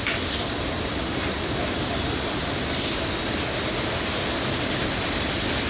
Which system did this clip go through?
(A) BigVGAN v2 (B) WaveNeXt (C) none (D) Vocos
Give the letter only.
C